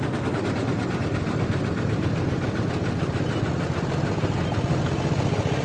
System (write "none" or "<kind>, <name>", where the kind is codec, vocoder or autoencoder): none